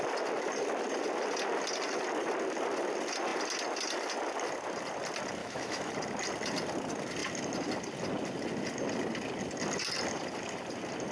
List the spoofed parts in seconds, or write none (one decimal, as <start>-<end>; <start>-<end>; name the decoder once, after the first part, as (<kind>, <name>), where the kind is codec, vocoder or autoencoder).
5.4-5.9 (autoencoder, DAC-VAE)